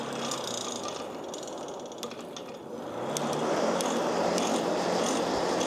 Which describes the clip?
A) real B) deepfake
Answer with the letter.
A